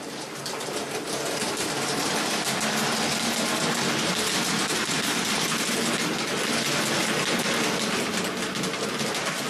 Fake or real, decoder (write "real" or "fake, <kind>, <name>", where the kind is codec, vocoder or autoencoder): real